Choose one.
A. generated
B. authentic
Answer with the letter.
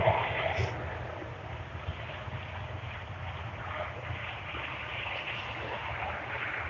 B